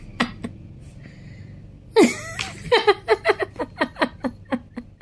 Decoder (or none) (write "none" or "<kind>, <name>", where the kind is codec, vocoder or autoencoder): none